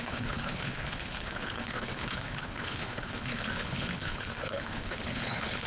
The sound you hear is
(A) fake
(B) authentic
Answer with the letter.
A